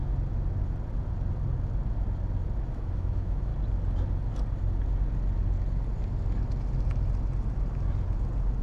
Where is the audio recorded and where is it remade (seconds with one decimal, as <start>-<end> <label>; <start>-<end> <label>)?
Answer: 0.0-2.7 recorded; 2.7-3.5 remade; 3.5-8.6 recorded